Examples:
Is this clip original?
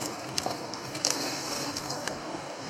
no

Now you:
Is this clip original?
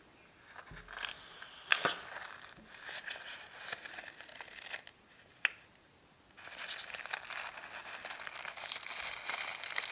yes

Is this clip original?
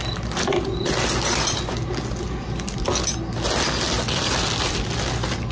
yes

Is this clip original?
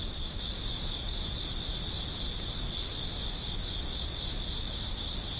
yes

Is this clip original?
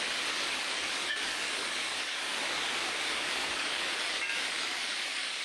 no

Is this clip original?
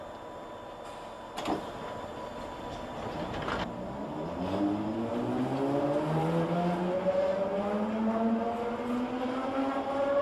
yes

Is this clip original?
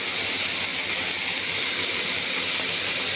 yes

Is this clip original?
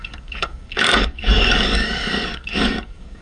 no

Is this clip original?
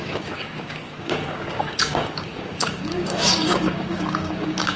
no